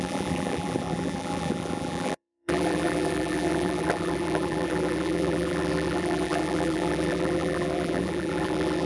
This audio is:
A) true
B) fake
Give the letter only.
B